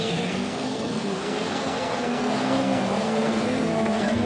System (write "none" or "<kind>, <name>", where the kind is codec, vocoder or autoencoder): codec, SNAC